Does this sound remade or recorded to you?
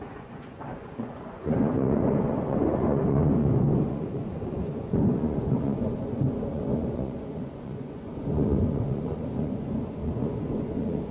remade